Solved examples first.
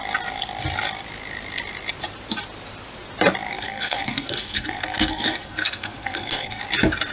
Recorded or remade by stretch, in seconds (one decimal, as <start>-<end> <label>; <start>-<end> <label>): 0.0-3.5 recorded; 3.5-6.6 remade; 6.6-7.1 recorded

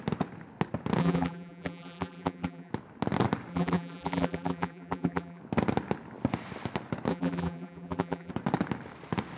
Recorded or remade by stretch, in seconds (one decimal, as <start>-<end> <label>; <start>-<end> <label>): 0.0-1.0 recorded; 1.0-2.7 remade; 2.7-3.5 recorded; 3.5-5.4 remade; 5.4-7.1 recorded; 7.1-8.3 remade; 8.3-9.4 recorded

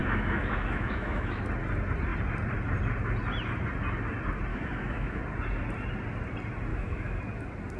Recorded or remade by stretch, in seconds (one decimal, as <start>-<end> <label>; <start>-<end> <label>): 0.0-1.4 remade; 1.4-4.5 recorded; 4.5-5.2 remade; 5.2-6.7 recorded; 6.7-7.2 remade; 7.2-7.8 recorded